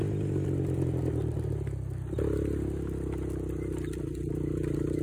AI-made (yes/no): no